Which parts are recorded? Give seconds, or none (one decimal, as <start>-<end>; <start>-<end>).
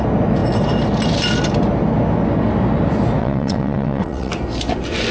0.0-3.2; 4.3-5.1